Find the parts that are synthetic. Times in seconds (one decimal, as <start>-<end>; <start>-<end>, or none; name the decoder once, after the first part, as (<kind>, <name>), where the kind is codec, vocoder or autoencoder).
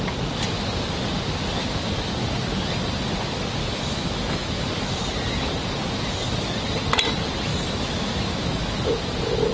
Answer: 3.6-4.7 (autoencoder, DAC-VAE); 7.5-8.8